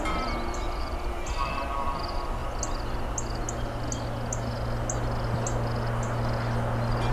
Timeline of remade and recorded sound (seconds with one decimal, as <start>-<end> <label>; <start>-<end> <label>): 0.0-2.4 remade; 2.4-7.1 recorded